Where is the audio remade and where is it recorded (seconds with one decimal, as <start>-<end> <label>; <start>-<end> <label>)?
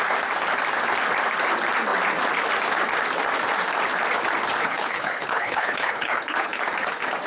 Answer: 0.0-4.6 recorded; 4.6-6.6 remade; 6.6-7.3 recorded